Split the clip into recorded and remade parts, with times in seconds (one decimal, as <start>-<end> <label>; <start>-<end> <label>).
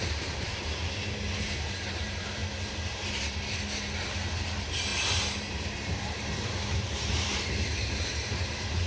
0.0-0.8 remade; 0.8-1.4 recorded; 1.4-2.4 remade; 2.4-4.1 recorded; 4.1-8.9 remade